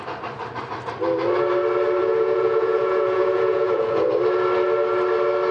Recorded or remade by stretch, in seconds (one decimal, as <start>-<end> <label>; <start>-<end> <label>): 0.0-2.0 recorded; 2.0-4.1 remade; 4.1-5.5 recorded